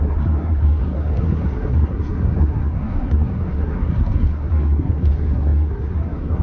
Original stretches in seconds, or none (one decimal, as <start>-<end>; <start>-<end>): none